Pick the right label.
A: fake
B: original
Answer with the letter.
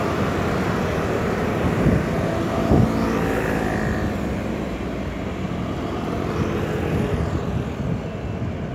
B